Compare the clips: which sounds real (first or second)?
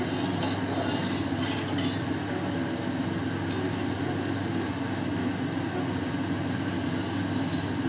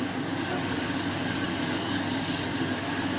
first